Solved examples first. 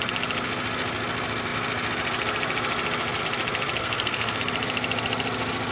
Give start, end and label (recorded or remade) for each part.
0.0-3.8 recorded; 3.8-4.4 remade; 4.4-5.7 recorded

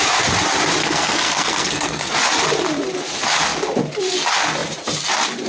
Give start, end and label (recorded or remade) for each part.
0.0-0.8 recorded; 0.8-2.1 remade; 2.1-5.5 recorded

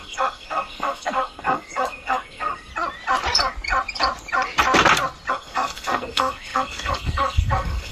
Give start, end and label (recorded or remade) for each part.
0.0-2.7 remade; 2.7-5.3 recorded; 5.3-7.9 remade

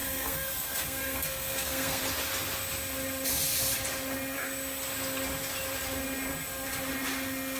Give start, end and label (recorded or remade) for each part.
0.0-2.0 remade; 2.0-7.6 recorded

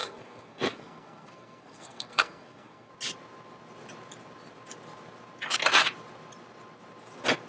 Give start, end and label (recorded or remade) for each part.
0.0-2.9 remade; 2.9-7.5 recorded

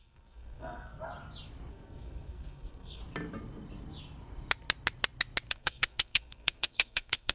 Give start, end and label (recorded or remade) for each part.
0.0-1.0 remade; 1.0-1.7 recorded; 1.7-3.0 remade; 3.0-5.5 recorded; 5.5-7.3 remade

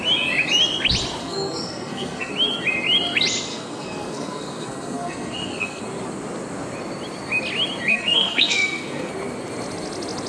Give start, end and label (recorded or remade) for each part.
0.0-1.2 recorded; 1.2-2.3 remade; 2.3-3.5 recorded; 3.5-5.8 remade; 5.8-7.9 recorded; 7.9-9.1 remade; 9.1-10.3 recorded